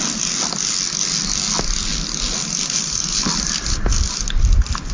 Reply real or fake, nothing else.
real